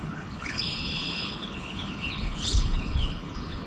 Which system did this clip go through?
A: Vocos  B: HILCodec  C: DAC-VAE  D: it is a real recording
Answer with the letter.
B